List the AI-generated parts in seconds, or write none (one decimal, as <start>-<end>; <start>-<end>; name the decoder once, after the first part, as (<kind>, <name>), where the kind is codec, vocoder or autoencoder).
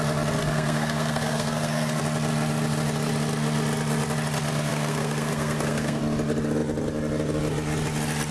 0.4-2.0 (codec, SNAC); 4.7-6.0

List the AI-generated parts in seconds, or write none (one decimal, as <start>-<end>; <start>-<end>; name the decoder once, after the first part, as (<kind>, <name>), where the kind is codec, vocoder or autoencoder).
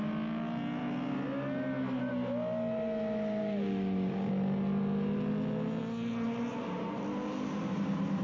3.4-4.3 (codec, DAC)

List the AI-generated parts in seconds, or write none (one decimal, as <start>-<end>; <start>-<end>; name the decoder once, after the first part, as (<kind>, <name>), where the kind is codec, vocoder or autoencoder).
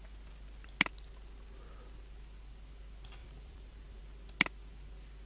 3.2-4.0 (vocoder, BigVGAN v2)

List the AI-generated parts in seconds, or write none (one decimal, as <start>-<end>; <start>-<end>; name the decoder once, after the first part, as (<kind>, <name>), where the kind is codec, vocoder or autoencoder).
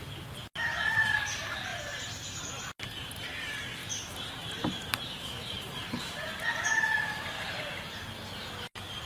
1.7-2.4 (vocoder, BigVGAN v2); 3.8-7.9